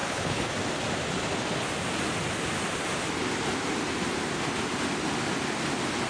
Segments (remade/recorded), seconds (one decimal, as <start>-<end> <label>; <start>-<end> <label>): 0.0-0.5 remade; 0.5-6.1 recorded

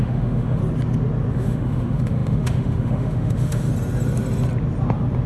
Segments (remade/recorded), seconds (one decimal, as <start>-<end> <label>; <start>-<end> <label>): 0.0-0.6 remade; 0.6-1.3 recorded; 1.3-3.7 remade; 3.7-5.3 recorded

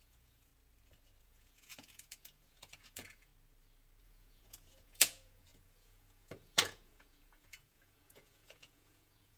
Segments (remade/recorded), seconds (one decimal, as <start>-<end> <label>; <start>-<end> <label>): 0.0-0.5 remade; 0.5-1.2 recorded; 1.2-3.3 remade; 3.3-4.0 recorded; 4.0-9.4 remade

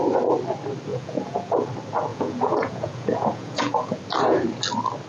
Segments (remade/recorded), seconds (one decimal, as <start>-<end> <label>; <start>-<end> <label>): 0.0-0.9 recorded; 0.9-1.7 remade; 1.7-2.1 recorded; 2.1-4.0 remade; 4.0-5.1 recorded

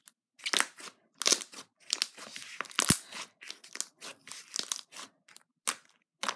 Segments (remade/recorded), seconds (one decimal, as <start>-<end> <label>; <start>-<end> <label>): 0.0-6.4 recorded